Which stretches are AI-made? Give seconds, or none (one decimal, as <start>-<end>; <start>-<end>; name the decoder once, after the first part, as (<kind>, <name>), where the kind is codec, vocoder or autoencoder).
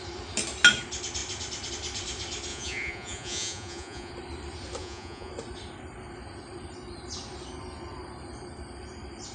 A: 2.5-4.1 (vocoder, Vocos); 4.8-5.3